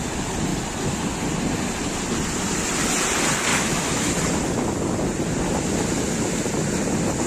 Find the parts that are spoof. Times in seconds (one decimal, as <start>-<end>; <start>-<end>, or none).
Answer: 3.5-4.1